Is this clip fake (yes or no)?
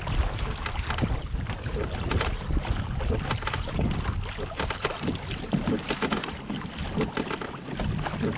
no